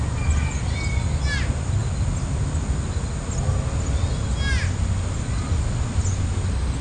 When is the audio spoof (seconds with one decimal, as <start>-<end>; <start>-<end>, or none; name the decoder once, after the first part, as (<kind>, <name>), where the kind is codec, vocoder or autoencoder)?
none